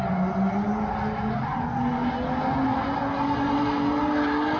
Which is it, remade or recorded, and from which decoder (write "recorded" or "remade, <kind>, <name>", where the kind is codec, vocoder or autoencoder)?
recorded